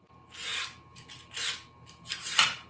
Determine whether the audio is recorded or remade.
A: recorded